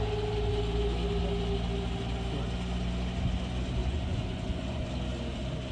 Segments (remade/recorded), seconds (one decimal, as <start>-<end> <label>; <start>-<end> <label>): 0.0-3.8 recorded; 3.8-4.9 remade; 4.9-5.7 recorded